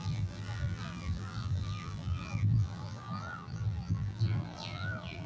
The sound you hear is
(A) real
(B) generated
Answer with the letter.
B